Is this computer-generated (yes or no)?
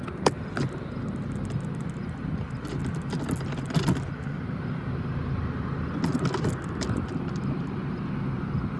no